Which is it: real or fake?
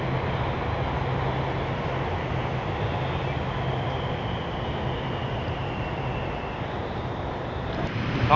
real